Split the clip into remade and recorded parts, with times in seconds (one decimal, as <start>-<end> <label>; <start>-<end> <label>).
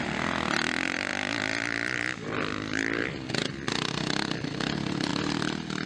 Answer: 0.0-5.9 recorded